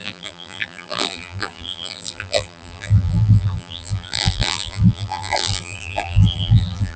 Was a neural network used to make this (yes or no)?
yes